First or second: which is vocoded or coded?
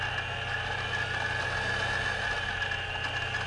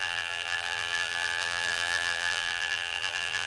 second